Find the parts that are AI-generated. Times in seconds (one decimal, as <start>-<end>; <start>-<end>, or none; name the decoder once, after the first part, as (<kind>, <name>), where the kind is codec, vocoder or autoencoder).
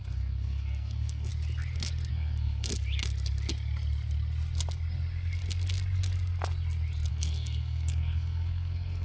0.0-1.3 (codec, SNAC); 2.1-2.7; 7.1-9.0